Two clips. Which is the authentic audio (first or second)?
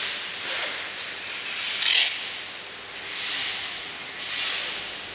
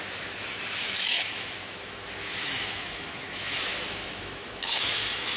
first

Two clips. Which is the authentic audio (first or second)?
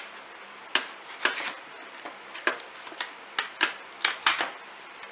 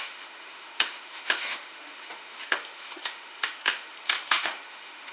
first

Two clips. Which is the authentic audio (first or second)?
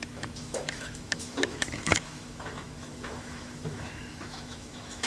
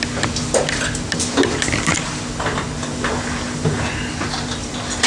second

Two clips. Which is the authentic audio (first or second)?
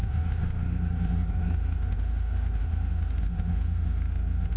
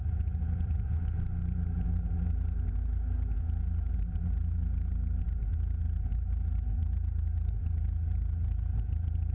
second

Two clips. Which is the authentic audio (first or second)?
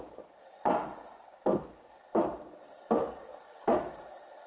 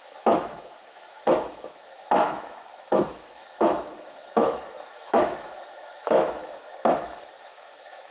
first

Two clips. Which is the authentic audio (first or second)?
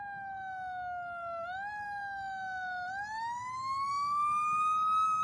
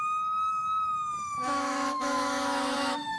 first